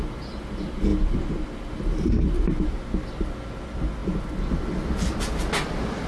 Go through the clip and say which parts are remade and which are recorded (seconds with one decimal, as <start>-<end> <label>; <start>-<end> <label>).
0.0-6.1 recorded